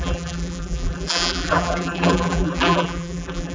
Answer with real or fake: fake